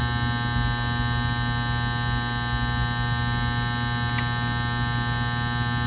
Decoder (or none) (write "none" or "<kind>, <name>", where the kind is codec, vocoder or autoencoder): none